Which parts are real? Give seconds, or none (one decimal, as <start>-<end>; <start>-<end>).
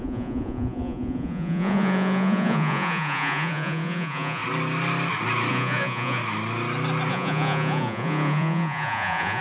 4.4-5.5; 6.2-7.1